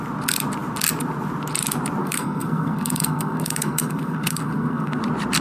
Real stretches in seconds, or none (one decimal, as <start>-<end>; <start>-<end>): 0.0-2.0; 5.0-5.4